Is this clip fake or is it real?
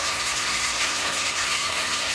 fake